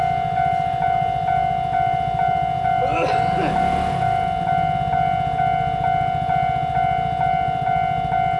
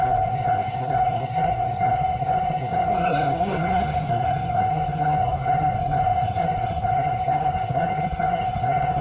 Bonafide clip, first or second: first